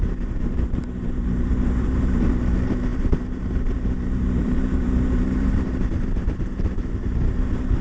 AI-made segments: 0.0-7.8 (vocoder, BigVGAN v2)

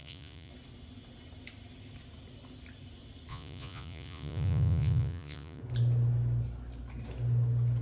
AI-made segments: 0.0-0.5 (vocoder, Vocos); 3.3-5.6

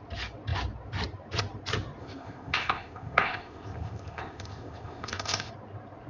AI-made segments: 2.0-5.5 (codec, ZipCodec)

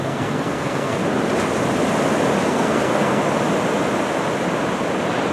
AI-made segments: 0.0-1.0 (codec, SNAC); 2.4-3.2

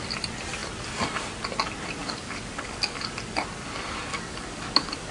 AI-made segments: 2.0-3.0 (codec, DAC); 4.1-5.1